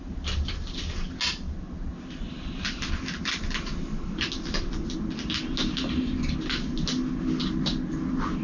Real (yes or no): yes